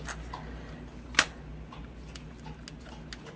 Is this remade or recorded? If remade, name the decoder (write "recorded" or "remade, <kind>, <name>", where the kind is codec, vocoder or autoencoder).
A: recorded